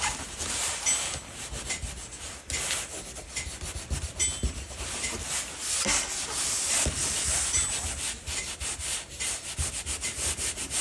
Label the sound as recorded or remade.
recorded